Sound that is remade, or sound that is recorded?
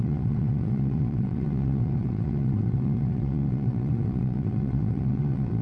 remade